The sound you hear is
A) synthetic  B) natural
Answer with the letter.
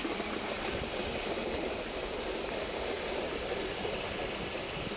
A